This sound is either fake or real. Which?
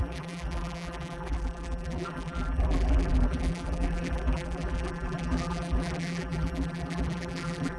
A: fake